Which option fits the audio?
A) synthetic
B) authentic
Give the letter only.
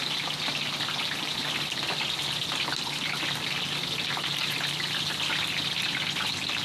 B